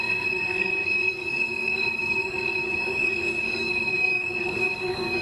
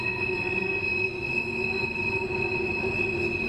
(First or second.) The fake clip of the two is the first